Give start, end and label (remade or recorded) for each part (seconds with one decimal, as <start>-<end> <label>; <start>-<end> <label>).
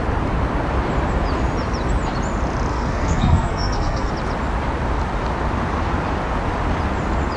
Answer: 0.0-2.7 recorded; 2.7-4.1 remade; 4.1-7.4 recorded